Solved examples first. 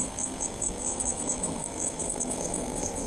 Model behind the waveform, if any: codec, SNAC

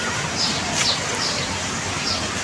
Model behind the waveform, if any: none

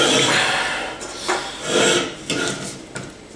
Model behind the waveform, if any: none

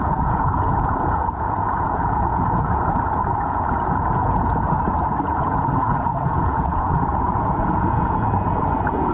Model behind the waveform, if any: vocoder, Vocos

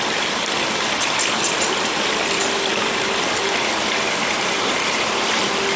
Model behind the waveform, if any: vocoder, BigVGAN v2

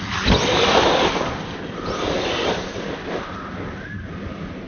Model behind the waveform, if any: none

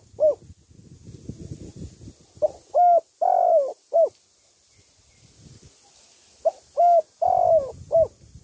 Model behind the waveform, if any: none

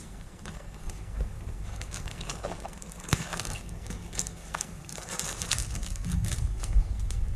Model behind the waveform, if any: codec, SNAC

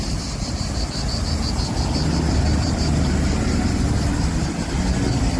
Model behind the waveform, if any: none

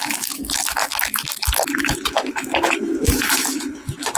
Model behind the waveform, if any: autoencoder, DAC-VAE